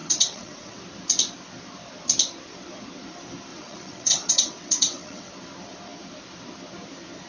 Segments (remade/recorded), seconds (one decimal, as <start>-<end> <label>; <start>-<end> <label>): 0.0-0.8 remade; 0.8-3.5 recorded; 3.5-5.3 remade; 5.3-7.3 recorded